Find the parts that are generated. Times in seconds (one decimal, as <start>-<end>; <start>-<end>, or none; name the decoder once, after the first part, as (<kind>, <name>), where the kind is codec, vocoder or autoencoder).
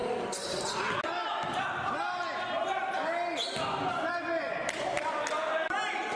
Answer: 3.7-6.2 (vocoder, BigVGAN v2)